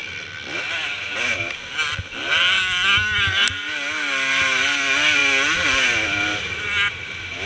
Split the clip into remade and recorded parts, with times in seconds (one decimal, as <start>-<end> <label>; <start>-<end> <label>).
0.0-7.5 recorded